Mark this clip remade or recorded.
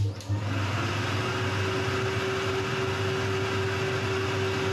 recorded